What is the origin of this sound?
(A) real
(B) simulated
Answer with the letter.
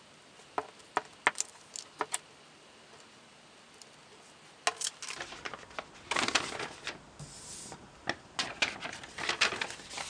A